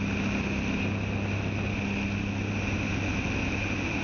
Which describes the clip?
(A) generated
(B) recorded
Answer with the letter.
B